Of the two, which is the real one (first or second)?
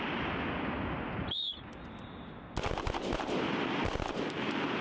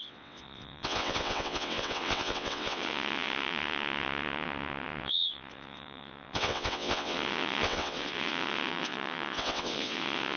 first